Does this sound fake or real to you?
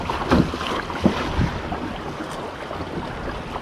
real